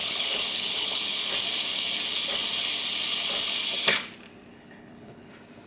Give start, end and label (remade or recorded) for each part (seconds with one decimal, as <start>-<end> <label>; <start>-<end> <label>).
0.0-1.3 remade; 1.3-4.5 recorded; 4.5-5.3 remade; 5.3-5.7 recorded